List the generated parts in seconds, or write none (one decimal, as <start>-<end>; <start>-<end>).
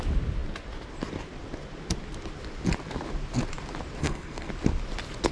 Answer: 4.0-4.5